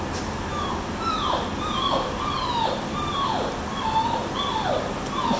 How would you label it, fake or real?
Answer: real